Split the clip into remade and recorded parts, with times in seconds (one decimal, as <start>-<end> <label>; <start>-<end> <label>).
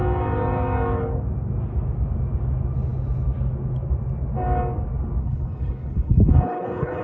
0.0-5.2 recorded; 5.2-7.0 remade